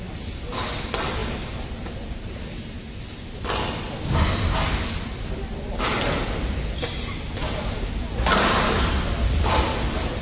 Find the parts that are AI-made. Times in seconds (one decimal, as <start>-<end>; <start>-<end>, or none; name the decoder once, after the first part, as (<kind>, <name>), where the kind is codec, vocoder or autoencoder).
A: none